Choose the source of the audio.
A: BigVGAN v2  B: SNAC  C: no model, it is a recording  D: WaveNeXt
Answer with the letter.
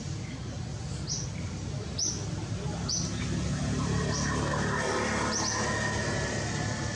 C